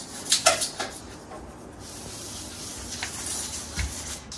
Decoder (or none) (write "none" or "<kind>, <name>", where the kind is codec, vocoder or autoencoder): none